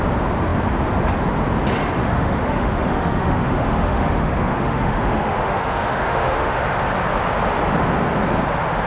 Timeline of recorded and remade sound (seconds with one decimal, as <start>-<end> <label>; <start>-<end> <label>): 0.0-2.0 recorded; 2.0-6.6 remade; 6.6-8.9 recorded